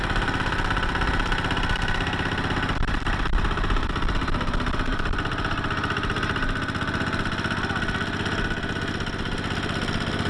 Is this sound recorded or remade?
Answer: recorded